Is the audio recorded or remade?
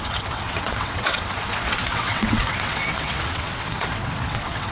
remade